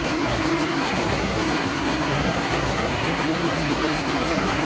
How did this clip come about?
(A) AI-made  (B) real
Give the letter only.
A